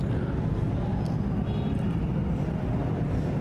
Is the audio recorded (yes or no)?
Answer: yes